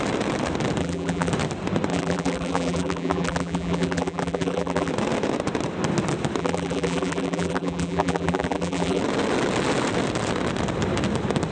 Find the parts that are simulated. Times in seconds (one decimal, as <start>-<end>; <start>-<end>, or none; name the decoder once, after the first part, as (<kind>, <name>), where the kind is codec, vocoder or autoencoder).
0.8-1.3 (vocoder, BigVGAN v2); 1.9-4.9; 6.4-9.0